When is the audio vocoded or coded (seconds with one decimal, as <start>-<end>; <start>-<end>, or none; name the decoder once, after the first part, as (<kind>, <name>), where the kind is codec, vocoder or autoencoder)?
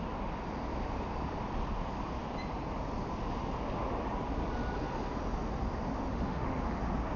6.1-6.8 (autoencoder, DAC-VAE)